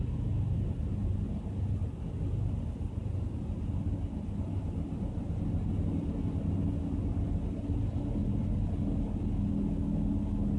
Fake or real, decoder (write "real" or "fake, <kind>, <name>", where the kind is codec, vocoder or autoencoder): real